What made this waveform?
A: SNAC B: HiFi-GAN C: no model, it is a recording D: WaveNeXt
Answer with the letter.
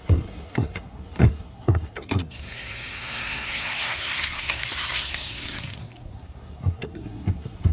A